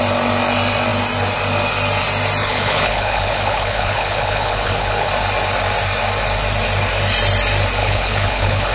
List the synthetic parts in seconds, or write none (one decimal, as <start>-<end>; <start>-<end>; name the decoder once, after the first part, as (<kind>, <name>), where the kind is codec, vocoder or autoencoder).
2.4-5.1 (codec, HILCodec); 7.8-8.7